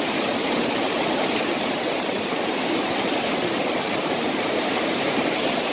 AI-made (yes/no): yes